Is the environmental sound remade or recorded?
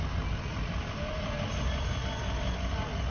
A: recorded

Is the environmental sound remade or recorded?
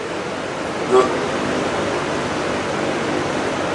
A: recorded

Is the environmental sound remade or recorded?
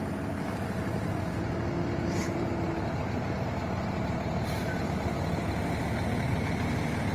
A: recorded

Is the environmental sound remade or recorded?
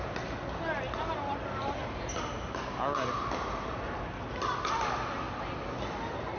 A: recorded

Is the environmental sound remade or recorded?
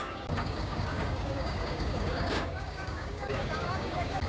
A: remade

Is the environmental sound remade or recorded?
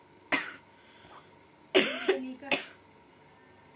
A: recorded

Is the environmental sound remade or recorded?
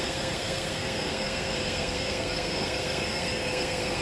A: remade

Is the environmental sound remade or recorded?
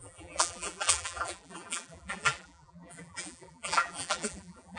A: remade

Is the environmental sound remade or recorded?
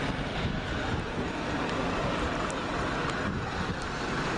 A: recorded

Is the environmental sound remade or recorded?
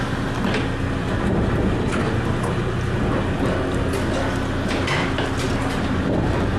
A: recorded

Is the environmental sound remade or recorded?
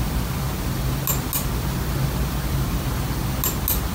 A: recorded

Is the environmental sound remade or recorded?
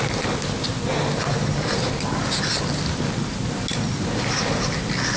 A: recorded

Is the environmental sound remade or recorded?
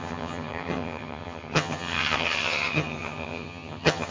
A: remade